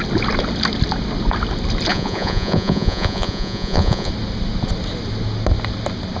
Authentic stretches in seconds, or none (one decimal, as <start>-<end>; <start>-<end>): 0.0-1.9; 4.1-6.2